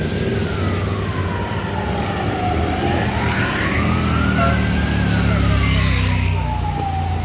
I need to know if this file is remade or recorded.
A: recorded